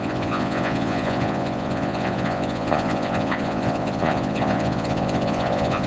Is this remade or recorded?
remade